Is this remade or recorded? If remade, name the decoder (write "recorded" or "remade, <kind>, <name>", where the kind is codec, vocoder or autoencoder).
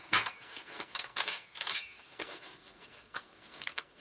remade, codec, SNAC